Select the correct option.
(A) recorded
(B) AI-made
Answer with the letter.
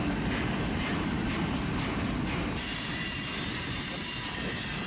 A